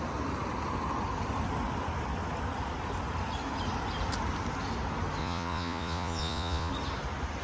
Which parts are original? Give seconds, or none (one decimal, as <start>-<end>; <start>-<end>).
0.0-5.2; 6.7-7.4